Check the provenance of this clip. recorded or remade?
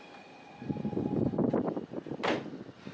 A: recorded